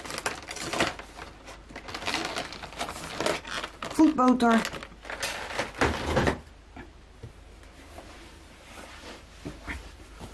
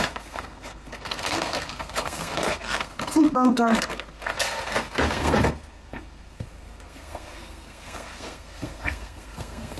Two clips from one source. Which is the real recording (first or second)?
first